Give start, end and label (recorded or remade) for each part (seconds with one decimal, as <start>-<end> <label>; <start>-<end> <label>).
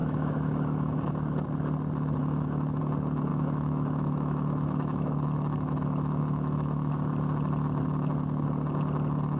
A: 0.0-1.1 remade; 1.1-2.2 recorded; 2.2-2.8 remade; 2.8-3.3 recorded; 3.3-6.9 remade; 6.9-9.4 recorded